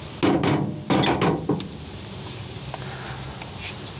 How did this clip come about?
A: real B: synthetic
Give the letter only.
A